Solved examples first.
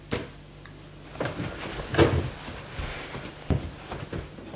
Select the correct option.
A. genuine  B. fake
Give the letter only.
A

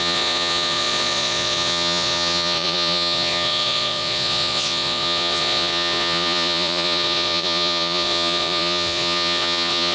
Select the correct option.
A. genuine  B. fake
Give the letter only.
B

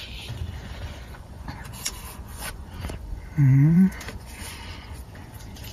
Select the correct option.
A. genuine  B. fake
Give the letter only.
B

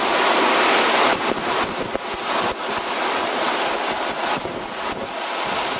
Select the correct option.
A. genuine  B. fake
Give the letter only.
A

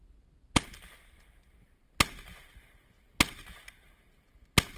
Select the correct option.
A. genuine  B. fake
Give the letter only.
A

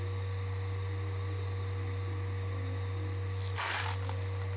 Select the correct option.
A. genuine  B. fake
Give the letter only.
A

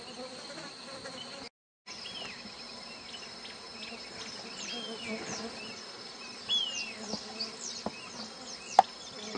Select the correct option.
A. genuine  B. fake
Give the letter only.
A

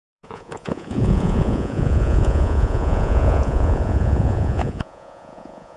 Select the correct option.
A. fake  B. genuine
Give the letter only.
A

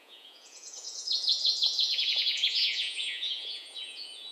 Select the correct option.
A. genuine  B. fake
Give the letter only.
B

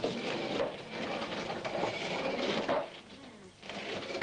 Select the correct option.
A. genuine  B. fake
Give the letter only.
A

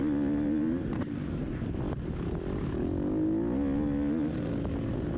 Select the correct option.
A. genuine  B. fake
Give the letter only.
A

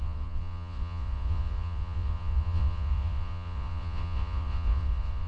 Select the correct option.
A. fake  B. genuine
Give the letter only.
A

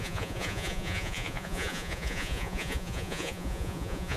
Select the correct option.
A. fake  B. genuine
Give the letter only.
A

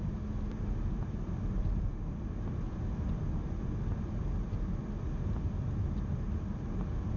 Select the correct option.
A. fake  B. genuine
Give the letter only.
B